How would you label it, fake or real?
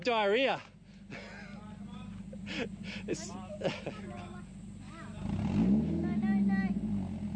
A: real